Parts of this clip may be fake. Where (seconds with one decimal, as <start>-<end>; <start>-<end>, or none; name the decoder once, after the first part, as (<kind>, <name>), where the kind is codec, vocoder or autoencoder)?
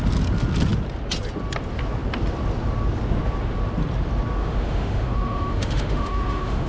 4.4-6.7 (autoencoder, DAC-VAE)